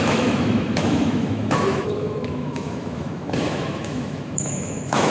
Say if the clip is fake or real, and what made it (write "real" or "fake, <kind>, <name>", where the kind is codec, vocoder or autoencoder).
fake, autoencoder, DAC-VAE